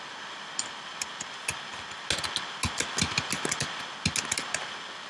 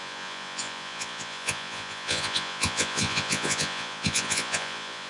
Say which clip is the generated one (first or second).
second